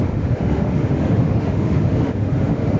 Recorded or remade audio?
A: remade